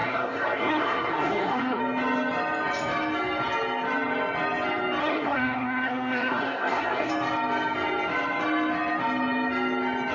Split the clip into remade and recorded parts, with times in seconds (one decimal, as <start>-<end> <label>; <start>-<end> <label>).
0.0-1.8 remade; 1.8-5.0 recorded; 5.0-7.1 remade; 7.1-10.1 recorded